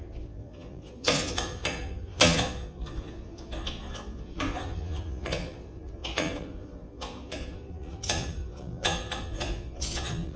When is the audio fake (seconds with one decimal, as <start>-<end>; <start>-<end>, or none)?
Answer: 0.0-10.4